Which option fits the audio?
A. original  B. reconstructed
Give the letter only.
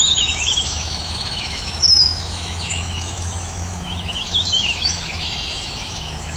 B